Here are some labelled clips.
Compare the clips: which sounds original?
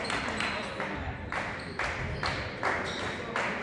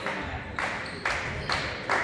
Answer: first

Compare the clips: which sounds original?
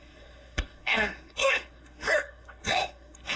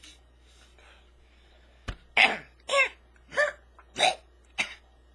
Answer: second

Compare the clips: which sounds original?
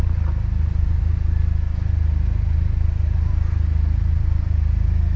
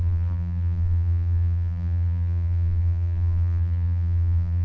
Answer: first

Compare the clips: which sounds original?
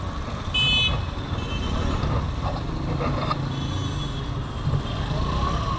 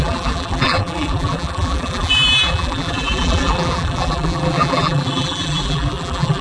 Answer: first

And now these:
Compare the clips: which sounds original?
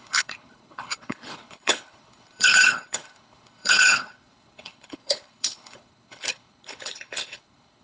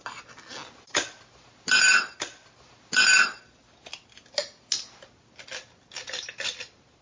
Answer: second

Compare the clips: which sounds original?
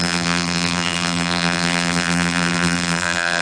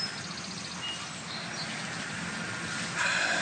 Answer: second